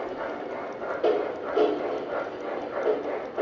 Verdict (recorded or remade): recorded